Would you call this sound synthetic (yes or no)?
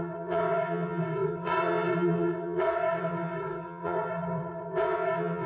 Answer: yes